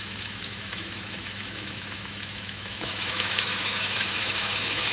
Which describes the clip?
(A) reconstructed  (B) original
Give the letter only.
A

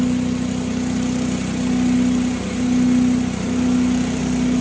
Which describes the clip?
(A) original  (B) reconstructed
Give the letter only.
A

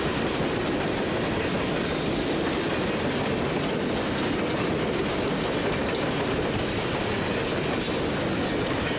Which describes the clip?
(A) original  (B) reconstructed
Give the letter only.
A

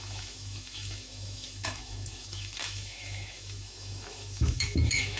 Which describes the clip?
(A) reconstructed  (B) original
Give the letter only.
A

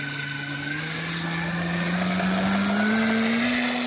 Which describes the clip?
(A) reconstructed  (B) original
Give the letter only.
B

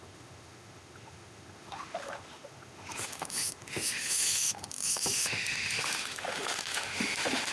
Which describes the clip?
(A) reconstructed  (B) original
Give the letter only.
A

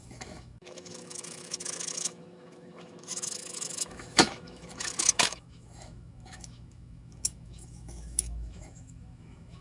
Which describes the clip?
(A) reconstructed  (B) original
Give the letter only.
A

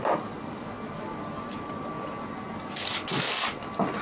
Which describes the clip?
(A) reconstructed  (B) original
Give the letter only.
B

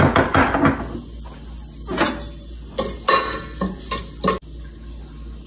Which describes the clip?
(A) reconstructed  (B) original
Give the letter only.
B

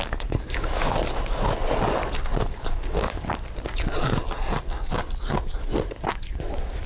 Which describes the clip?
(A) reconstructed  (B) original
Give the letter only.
B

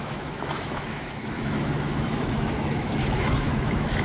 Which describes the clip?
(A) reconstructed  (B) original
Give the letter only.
A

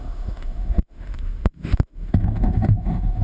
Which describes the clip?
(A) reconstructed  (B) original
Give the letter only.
A